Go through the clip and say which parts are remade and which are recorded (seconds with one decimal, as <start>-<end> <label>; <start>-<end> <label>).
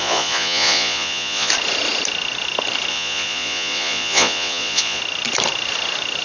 0.0-1.5 remade; 1.5-2.9 recorded; 2.9-5.0 remade; 5.0-6.2 recorded